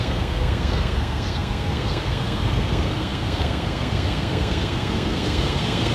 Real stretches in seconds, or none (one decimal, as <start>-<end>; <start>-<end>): none